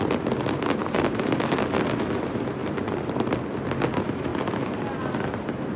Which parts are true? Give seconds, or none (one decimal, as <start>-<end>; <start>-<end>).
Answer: 0.0-0.8; 1.8-2.6; 3.4-5.8